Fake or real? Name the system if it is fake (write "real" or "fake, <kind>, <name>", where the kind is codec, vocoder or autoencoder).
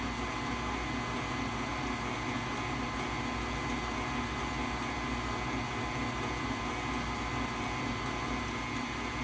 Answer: real